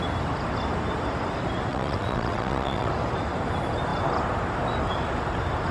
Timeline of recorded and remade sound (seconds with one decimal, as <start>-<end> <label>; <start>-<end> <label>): 0.0-1.7 recorded; 1.7-2.9 remade; 2.9-5.7 recorded